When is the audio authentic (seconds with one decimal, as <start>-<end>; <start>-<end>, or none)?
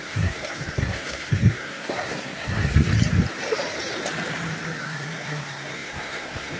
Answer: 2.9-4.8